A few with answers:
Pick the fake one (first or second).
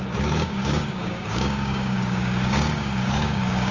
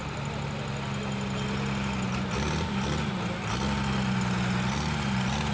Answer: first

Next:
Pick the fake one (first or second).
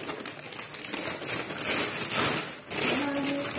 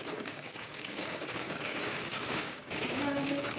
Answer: second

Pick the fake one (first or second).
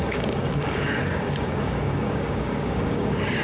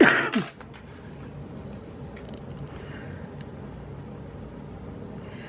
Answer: first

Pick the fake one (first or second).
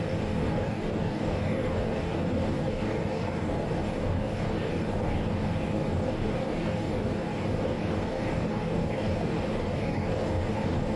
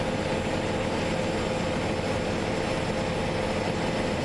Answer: first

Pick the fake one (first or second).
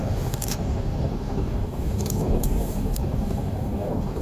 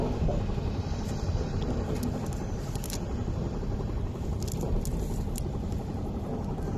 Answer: first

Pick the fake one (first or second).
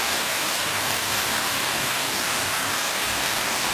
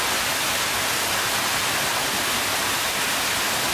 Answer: first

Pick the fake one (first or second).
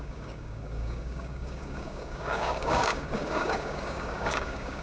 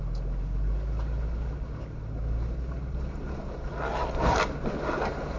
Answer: first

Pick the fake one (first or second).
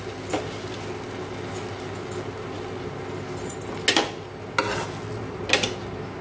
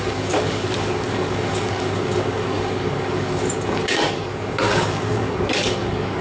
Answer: second